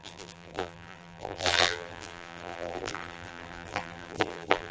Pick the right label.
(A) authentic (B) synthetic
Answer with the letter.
B